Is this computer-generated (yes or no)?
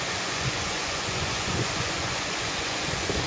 yes